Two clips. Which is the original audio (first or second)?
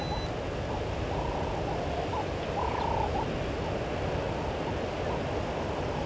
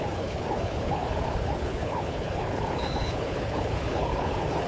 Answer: first